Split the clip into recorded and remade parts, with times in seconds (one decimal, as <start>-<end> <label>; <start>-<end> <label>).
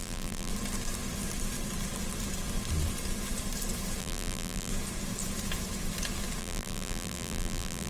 0.0-0.5 remade; 0.5-4.0 recorded; 4.0-4.7 remade; 4.7-6.4 recorded; 6.4-7.9 remade